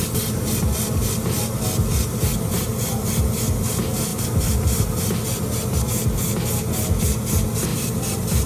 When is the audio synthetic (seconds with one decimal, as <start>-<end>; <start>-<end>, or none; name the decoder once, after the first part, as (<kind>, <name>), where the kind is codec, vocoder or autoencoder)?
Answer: 4.1-5.7 (vocoder, BigVGAN v2); 7.7-8.5